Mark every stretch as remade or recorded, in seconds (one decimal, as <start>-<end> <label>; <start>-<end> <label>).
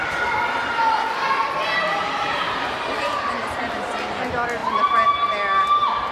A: 0.0-2.0 recorded; 2.0-3.3 remade; 3.3-6.1 recorded